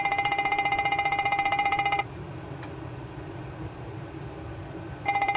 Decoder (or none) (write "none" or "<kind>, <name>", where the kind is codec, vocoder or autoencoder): vocoder, BigVGAN v2